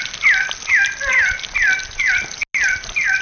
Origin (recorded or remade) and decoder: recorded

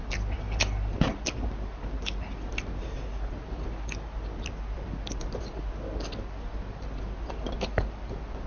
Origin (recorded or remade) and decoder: recorded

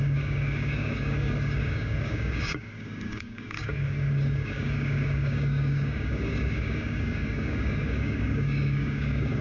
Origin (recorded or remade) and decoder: remade, codec, DAC